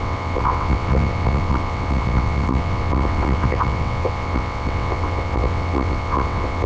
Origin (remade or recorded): remade